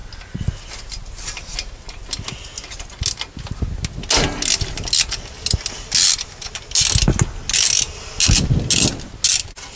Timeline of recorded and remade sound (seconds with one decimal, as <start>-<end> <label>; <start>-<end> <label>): 0.0-9.8 recorded